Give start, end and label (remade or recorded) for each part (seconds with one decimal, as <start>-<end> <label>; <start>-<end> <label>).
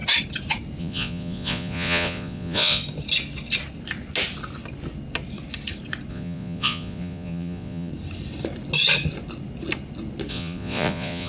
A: 0.0-0.8 recorded; 0.8-2.8 remade; 2.8-6.1 recorded; 6.1-7.9 remade; 7.9-10.3 recorded; 10.3-11.3 remade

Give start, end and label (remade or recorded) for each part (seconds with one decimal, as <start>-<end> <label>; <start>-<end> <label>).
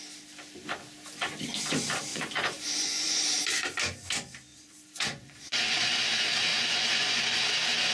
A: 0.0-2.1 recorded; 2.1-3.4 remade; 3.4-4.5 recorded; 4.5-6.0 remade; 6.0-6.5 recorded; 6.5-7.4 remade; 7.4-7.9 recorded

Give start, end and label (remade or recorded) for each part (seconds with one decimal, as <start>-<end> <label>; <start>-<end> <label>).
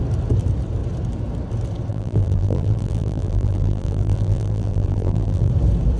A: 0.0-1.9 recorded; 1.9-5.5 remade; 5.5-6.0 recorded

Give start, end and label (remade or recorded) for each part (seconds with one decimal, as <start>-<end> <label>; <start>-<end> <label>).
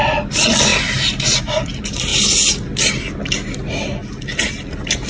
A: 0.0-5.1 recorded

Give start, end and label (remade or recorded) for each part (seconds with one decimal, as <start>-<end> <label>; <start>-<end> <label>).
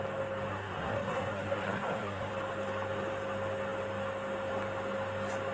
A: 0.0-0.5 recorded; 0.5-2.3 remade; 2.3-5.5 recorded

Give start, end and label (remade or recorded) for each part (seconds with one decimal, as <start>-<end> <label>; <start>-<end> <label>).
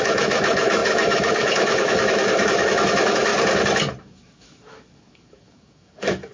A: 0.0-3.3 remade; 3.3-4.0 recorded; 4.0-6.3 remade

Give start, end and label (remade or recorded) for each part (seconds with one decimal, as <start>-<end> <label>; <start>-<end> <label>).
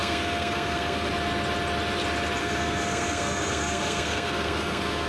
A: 0.0-1.1 remade; 1.1-2.4 recorded; 2.4-5.1 remade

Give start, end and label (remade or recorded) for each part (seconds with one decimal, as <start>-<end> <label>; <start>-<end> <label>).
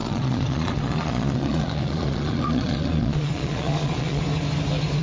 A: 0.0-4.2 remade; 4.2-5.0 recorded